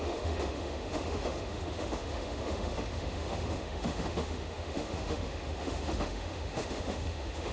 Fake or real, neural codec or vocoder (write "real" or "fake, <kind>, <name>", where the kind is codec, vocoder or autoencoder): fake, autoencoder, DAC-VAE